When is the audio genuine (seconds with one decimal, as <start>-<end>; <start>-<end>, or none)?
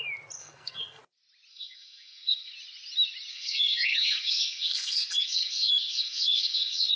0.0-0.4; 1.0-1.5; 2.5-3.3